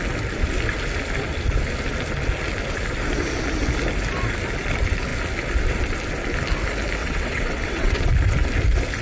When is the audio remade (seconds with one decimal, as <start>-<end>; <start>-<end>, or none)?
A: 7.0-8.1